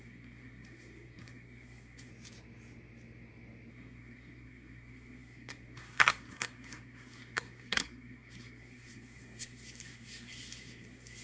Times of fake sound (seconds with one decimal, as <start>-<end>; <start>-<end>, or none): 0.0-2.1; 3.7-11.2